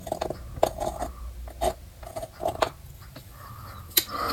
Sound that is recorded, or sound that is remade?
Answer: recorded